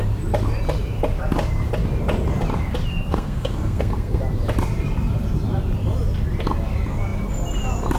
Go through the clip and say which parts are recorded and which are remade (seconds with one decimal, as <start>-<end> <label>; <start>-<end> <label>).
0.0-2.9 recorded; 2.9-4.2 remade; 4.2-8.0 recorded